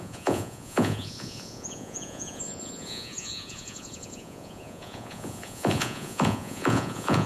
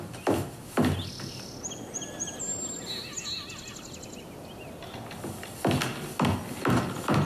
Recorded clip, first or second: second